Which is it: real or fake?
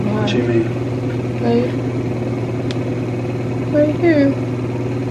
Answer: real